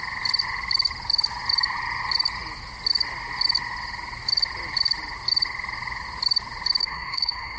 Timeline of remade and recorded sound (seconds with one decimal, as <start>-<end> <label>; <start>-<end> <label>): 0.0-6.8 recorded; 6.8-7.6 remade